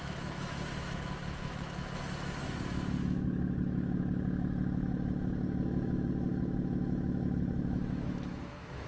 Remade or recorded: remade